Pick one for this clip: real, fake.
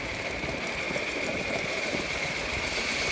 fake